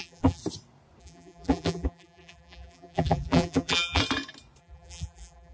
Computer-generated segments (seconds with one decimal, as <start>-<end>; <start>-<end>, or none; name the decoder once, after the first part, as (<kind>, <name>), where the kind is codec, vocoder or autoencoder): 0.0-0.4 (vocoder, BigVGAN v2); 1.0-4.0; 4.6-5.5